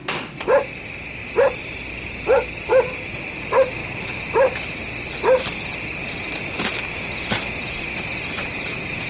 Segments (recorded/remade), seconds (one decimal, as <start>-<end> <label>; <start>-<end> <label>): 0.0-1.2 recorded; 1.2-2.9 remade; 2.9-9.1 recorded